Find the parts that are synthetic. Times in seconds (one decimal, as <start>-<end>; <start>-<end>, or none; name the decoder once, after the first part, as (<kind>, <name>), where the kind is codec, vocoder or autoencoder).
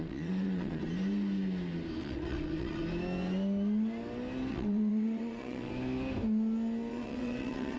0.0-0.8 (vocoder, WaveNeXt); 2.0-2.8; 4.5-5.7; 6.9-7.8